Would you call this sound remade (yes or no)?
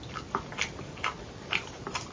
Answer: no